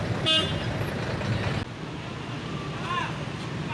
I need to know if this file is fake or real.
real